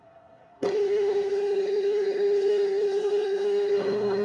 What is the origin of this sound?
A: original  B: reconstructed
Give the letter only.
B